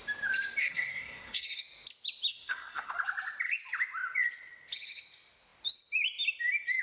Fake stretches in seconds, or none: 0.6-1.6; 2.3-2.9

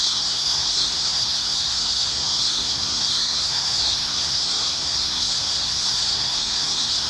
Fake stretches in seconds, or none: 0.0-7.1

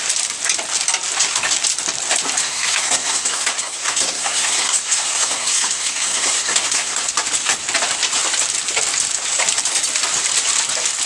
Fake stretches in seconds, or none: 2.4-7.1

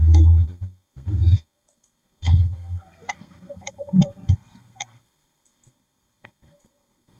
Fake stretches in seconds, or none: 0.0-7.2

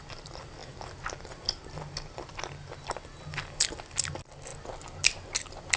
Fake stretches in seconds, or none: none

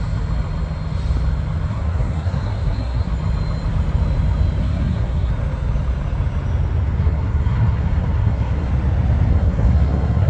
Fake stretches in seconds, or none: 1.7-3.1; 4.6-5.3; 7.0-8.7; 9.3-10.3